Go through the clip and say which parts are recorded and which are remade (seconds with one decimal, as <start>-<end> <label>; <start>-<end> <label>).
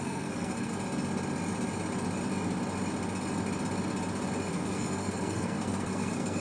0.0-0.7 remade; 0.7-4.5 recorded; 4.5-6.4 remade